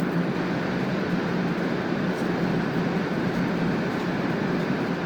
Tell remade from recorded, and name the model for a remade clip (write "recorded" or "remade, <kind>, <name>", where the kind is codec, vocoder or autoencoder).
recorded